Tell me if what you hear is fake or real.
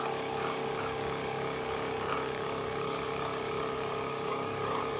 fake